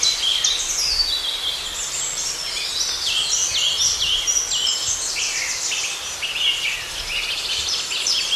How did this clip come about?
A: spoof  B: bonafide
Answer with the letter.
B